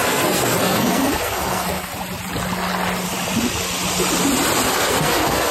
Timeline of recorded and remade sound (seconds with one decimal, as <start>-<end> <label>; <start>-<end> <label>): 0.0-1.9 remade; 1.9-4.7 recorded; 4.7-5.5 remade